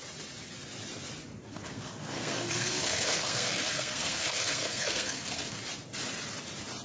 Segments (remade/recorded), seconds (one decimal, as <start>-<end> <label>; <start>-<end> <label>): 0.0-1.5 recorded; 1.5-5.6 remade; 5.6-6.8 recorded